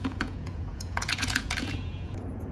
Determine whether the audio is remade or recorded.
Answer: remade